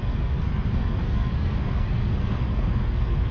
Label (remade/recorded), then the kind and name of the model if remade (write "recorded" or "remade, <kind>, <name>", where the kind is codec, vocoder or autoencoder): remade, codec, SNAC